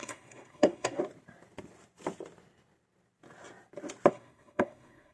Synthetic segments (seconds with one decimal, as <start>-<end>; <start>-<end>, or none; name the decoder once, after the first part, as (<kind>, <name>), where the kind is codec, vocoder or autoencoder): 0.0-1.0 (codec, SNAC); 4.1-5.1